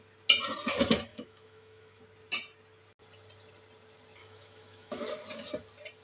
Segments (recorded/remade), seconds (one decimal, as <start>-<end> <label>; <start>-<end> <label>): 0.0-1.1 recorded; 1.1-2.0 remade; 2.0-4.2 recorded; 4.2-5.0 remade; 5.0-6.0 recorded